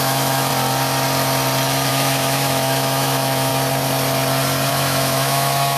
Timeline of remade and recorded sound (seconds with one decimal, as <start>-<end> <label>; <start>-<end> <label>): 0.0-0.5 remade; 0.5-1.9 recorded; 1.9-3.5 remade; 3.5-4.7 recorded; 4.7-5.8 remade

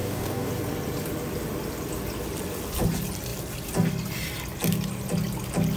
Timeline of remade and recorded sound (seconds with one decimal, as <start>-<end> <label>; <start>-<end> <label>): 0.0-0.5 remade; 0.5-5.8 recorded

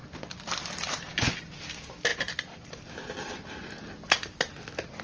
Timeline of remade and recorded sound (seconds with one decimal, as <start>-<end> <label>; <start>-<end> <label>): 0.0-0.9 remade; 0.9-2.1 recorded; 2.1-3.8 remade; 3.8-5.0 recorded